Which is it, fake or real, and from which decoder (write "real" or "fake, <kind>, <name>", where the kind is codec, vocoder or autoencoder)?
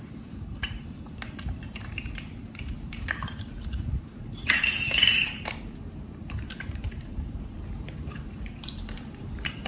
fake, vocoder, BigVGAN v2